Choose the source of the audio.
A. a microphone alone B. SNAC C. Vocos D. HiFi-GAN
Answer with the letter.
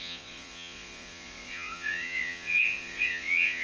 C